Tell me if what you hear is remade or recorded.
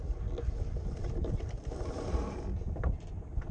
recorded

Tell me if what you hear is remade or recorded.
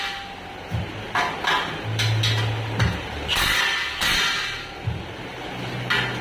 recorded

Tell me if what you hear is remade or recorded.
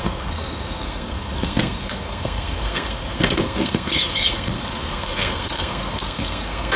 remade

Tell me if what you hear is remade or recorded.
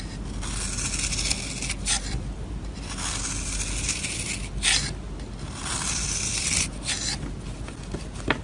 recorded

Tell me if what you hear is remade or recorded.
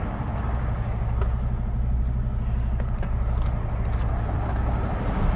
recorded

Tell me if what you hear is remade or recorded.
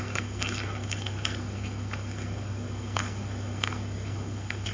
remade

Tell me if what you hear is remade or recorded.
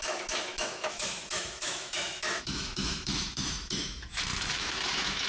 remade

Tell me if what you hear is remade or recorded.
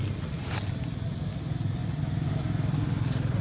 recorded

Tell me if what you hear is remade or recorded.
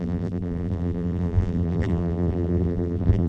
remade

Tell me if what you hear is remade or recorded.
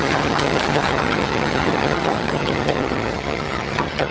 remade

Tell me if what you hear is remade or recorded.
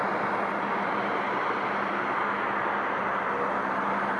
recorded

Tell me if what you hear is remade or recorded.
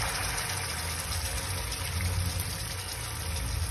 recorded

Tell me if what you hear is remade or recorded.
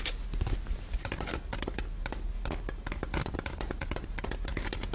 recorded